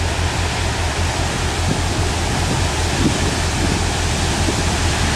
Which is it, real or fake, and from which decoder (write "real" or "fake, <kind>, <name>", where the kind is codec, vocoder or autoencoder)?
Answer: real